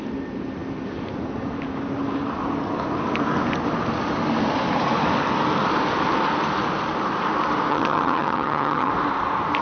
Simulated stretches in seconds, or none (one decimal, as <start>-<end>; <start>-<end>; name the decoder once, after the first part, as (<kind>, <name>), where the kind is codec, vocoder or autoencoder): 7.7-8.9 (vocoder, HiFi-GAN)